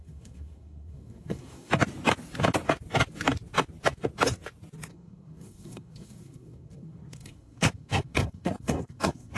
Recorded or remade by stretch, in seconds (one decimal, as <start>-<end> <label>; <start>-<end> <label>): 0.0-1.7 remade; 1.7-4.9 recorded; 4.9-9.4 remade